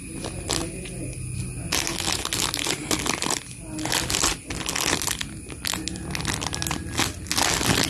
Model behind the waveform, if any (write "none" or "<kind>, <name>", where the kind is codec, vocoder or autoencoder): none